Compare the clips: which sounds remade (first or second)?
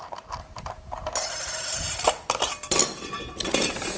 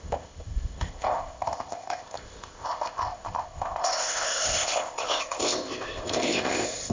second